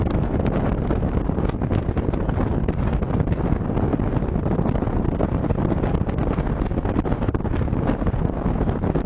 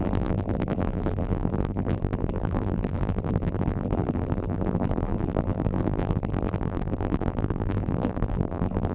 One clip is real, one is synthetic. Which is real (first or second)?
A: first